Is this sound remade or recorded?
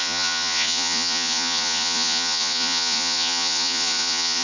remade